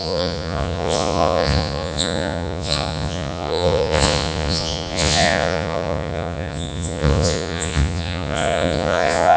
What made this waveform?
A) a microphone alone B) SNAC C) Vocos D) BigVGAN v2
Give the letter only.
C